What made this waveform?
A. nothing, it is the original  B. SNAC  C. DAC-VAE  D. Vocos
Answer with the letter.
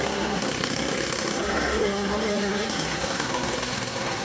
B